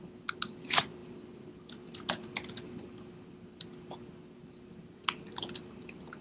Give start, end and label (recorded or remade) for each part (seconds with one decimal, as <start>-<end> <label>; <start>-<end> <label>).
0.0-6.2 recorded